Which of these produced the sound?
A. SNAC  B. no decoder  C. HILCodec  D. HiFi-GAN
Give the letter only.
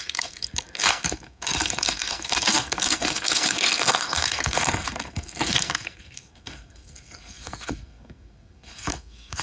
A